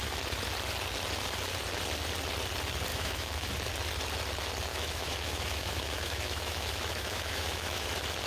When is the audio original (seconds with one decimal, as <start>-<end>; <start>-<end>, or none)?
0.0-2.9; 3.5-4.7; 7.9-8.3